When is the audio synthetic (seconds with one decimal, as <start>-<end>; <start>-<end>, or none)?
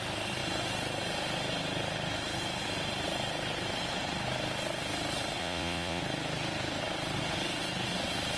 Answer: 5.4-6.0